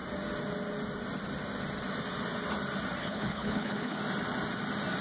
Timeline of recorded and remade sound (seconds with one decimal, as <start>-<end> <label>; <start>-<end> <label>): 0.0-3.0 recorded; 3.0-4.0 remade; 4.0-5.0 recorded

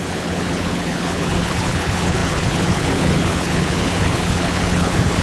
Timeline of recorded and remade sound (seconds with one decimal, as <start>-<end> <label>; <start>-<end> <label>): 0.0-5.2 remade

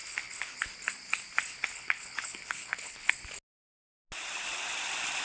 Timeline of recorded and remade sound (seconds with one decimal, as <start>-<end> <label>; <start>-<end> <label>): 0.0-0.6 remade; 0.6-1.7 recorded; 1.7-3.1 remade; 3.1-5.2 recorded

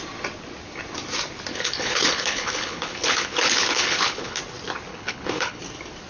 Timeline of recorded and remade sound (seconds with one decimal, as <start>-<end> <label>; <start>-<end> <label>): 0.0-1.5 recorded; 1.5-4.4 remade; 4.4-4.9 recorded; 4.9-5.6 remade; 5.6-6.1 recorded